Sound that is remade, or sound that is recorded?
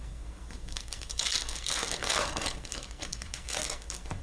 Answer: remade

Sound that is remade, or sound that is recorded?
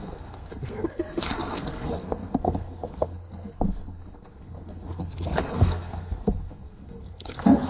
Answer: remade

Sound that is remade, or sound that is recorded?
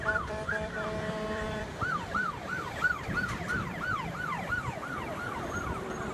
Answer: remade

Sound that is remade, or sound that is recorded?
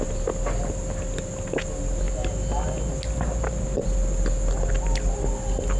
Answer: recorded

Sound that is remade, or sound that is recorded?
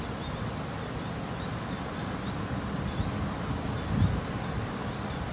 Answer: recorded